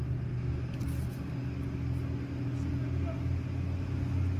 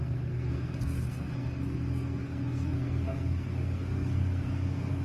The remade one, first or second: second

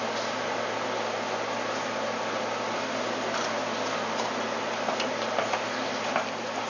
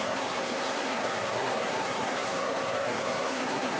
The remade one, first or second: second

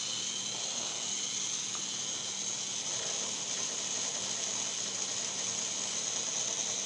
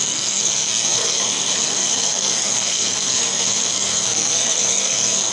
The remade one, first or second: second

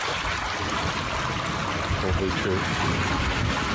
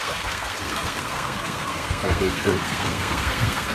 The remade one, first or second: second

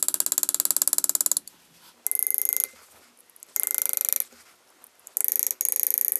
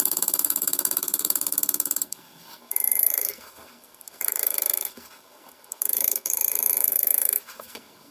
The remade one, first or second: second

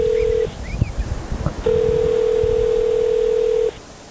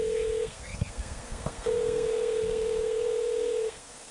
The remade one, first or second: second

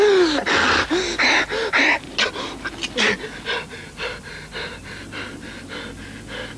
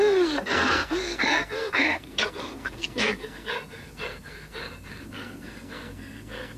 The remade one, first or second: second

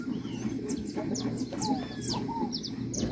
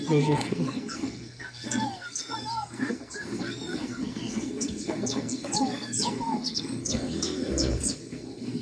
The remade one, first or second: second